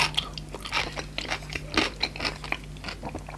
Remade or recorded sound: recorded